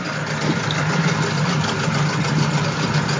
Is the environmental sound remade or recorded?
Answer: recorded